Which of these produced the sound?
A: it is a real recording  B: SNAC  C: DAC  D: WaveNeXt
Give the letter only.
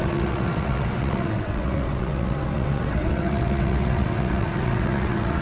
D